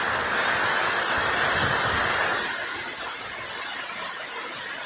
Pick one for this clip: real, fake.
real